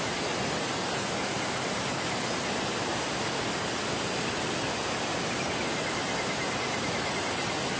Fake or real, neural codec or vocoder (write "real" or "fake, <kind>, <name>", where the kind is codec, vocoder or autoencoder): real